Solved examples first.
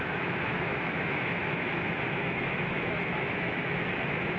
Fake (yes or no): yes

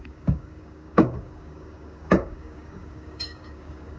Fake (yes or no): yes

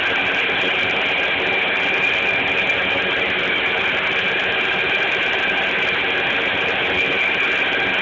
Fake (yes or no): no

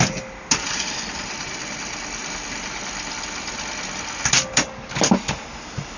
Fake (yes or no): no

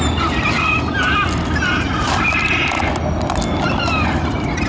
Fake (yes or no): no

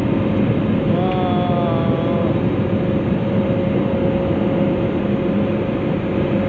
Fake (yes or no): no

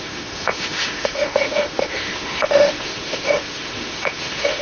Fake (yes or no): yes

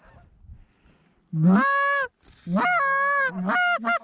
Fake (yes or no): no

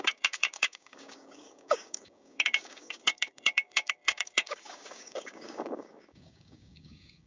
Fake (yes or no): yes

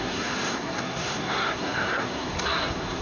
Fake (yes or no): yes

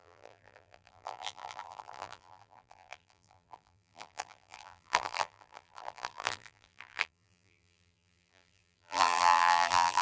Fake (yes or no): yes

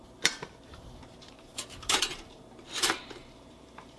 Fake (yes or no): yes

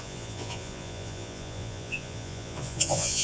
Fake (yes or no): yes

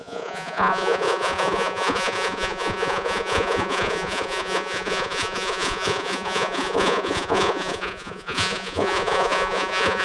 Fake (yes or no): yes